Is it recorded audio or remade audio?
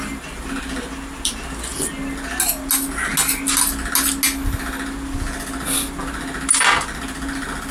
recorded